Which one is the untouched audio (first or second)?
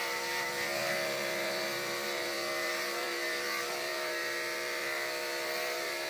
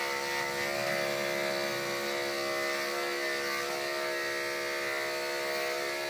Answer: second